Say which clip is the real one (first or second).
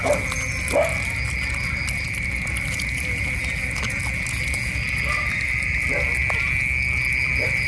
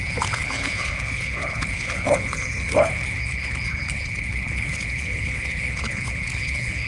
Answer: first